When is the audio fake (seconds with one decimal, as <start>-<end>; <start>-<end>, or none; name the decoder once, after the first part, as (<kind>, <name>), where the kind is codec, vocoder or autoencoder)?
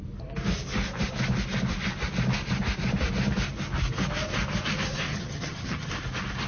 5.1-5.9 (vocoder, HiFi-GAN)